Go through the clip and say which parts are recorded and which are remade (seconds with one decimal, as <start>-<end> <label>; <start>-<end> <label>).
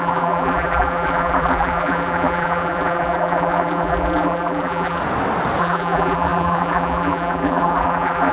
0.0-5.0 remade; 5.0-5.6 recorded; 5.6-8.3 remade